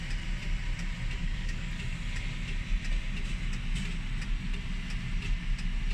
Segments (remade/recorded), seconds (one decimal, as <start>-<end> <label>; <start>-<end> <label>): 0.0-1.2 recorded; 1.2-1.7 remade; 1.7-5.9 recorded